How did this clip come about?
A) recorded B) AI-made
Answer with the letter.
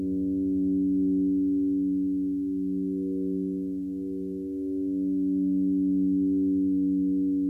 A